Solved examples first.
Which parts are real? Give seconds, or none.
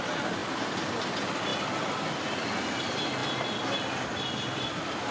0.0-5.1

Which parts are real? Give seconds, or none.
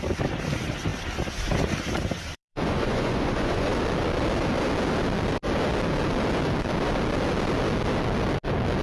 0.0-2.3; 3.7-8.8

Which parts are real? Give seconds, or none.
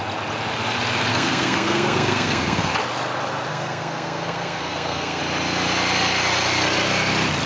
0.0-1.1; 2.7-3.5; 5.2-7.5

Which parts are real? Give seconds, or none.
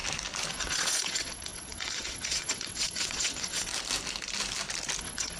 0.0-0.5; 3.7-5.0